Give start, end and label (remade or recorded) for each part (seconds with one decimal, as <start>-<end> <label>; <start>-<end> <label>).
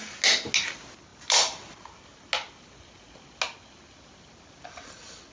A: 0.0-5.3 recorded